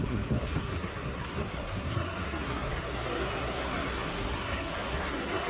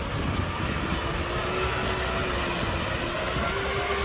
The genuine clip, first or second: second